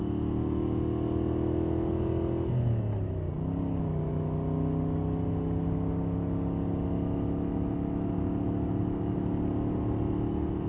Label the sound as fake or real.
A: real